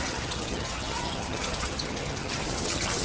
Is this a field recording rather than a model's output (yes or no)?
no